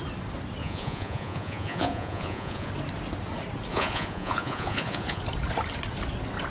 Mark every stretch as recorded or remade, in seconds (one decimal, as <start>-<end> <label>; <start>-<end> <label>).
0.0-0.6 recorded; 0.6-2.7 remade; 2.7-3.7 recorded; 3.7-5.2 remade; 5.2-6.5 recorded